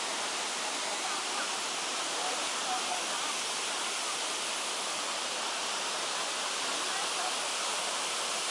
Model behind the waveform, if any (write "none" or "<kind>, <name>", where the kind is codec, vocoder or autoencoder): none